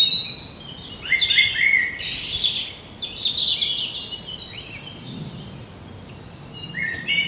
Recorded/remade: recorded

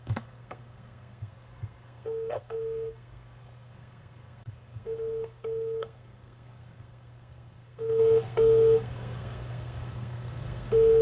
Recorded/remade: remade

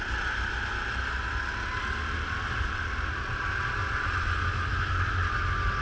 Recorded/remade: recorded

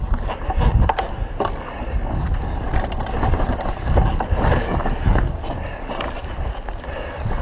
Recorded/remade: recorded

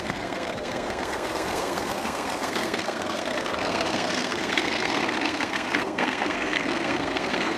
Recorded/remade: remade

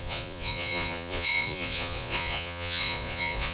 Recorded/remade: remade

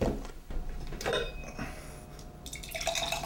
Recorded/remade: recorded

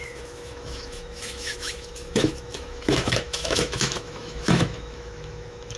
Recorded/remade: remade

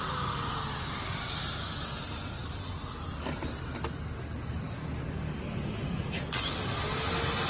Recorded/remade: recorded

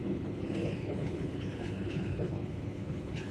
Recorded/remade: remade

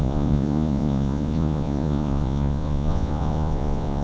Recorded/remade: remade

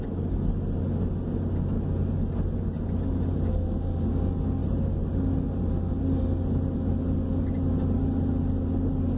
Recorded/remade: recorded